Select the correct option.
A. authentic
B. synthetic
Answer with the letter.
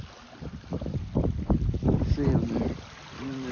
A